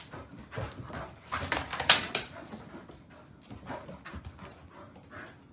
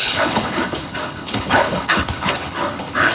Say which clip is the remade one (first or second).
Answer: second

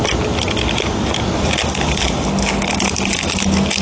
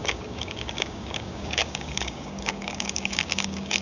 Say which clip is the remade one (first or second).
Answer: second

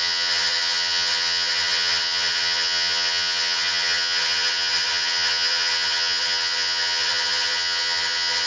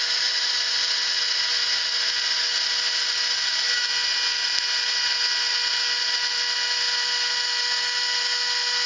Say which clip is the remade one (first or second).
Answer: first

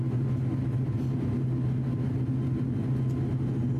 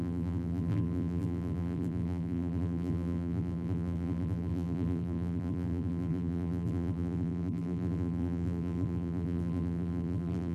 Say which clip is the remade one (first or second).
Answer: second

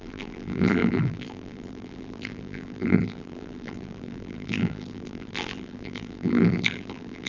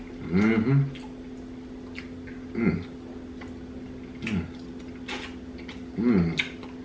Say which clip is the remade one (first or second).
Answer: first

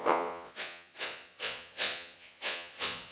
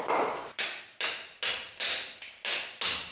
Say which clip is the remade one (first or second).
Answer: first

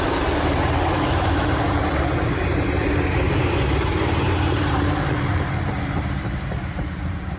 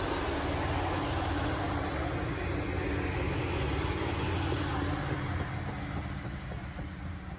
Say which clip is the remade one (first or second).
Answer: first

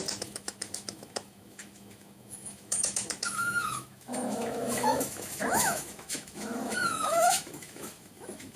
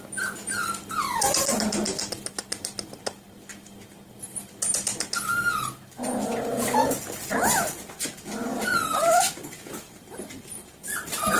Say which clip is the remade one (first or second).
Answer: first